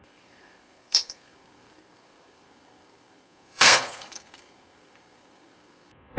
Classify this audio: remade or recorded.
remade